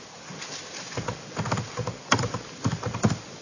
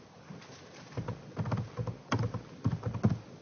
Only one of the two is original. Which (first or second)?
second